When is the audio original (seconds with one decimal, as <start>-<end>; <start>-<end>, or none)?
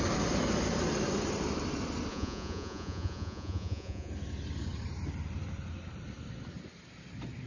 0.0-2.1; 4.1-7.5